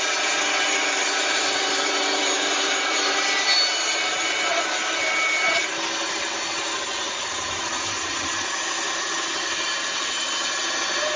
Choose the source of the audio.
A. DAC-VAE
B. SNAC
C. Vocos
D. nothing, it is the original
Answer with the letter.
D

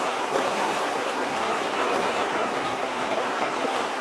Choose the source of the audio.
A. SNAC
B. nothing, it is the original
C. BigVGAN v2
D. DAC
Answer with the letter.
A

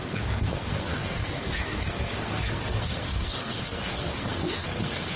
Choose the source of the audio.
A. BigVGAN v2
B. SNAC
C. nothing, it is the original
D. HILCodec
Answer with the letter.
B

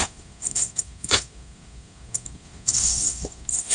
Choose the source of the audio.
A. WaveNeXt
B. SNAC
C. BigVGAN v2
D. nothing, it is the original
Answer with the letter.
B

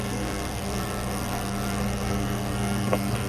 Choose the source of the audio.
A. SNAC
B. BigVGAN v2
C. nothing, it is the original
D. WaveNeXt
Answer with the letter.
A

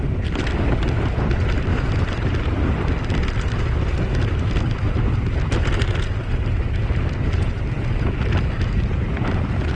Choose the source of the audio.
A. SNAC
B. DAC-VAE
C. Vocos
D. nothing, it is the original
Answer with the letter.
D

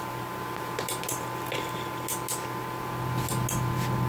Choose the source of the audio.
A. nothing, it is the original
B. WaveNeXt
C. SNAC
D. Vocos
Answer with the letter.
A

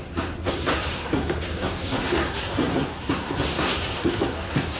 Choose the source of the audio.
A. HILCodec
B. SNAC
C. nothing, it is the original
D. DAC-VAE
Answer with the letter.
B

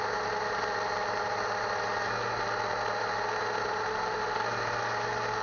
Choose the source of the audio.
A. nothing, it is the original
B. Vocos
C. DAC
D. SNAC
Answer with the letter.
A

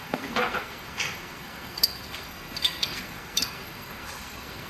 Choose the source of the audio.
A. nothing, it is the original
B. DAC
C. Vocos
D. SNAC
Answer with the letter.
D